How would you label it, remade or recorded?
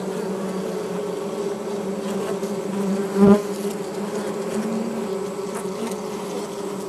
recorded